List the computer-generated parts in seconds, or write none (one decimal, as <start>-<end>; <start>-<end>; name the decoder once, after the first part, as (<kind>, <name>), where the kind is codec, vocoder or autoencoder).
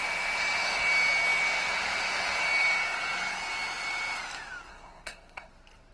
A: 4.7-5.5 (codec, SNAC)